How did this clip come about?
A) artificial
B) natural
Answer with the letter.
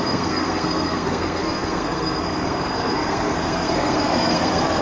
A